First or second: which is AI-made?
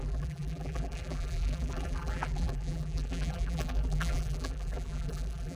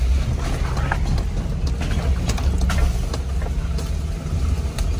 first